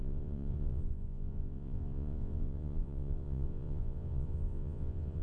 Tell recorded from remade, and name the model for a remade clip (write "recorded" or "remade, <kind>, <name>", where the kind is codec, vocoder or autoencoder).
remade, vocoder, Vocos